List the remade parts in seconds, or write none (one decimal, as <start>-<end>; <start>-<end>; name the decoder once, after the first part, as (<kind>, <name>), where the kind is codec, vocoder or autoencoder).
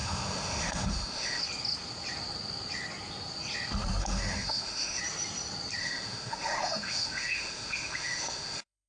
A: 0.0-1.4 (autoencoder, DAC-VAE); 4.0-5.0; 5.8-8.9